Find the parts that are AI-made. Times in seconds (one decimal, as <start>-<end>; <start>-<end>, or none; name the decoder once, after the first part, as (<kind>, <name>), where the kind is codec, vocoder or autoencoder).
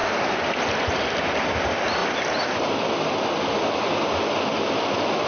none